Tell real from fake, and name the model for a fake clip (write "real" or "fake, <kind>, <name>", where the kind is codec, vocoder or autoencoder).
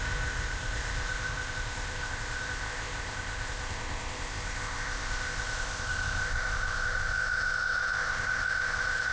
fake, codec, ZipCodec